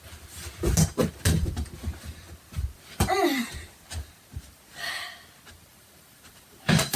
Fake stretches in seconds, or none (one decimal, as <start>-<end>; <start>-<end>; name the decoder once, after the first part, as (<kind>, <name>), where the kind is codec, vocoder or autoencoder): 5.7-7.0 (vocoder, BigVGAN v2)